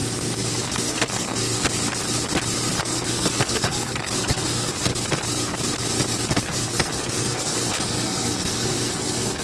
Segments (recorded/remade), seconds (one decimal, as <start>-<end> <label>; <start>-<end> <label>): 0.0-0.6 recorded; 0.6-1.4 remade; 1.4-2.8 recorded; 2.8-4.9 remade; 4.9-6.3 recorded; 6.3-9.4 remade